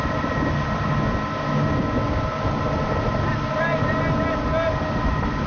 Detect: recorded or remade recorded